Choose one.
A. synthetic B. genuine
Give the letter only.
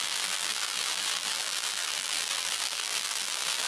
A